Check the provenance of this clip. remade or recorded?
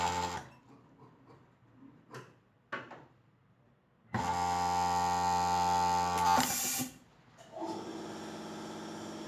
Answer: recorded